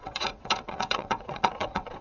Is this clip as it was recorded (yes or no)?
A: no